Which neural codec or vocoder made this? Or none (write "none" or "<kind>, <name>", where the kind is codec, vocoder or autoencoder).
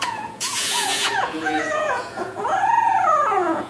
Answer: vocoder, Vocos